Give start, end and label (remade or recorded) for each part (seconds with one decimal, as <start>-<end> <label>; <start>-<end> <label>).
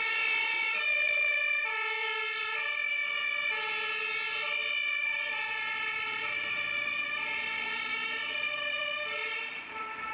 0.0-3.0 remade; 3.0-4.9 recorded; 4.9-10.1 remade